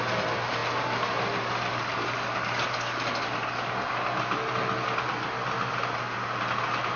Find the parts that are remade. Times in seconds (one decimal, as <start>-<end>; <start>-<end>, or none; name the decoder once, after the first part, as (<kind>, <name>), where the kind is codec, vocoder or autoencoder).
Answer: none